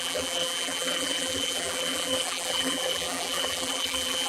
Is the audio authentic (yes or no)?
no